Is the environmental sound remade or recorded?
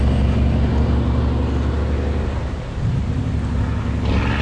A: recorded